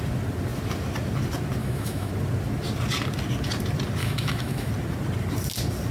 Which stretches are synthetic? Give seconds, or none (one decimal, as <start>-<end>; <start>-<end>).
1.6-2.1; 4.0-4.7